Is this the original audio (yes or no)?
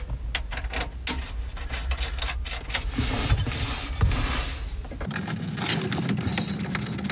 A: yes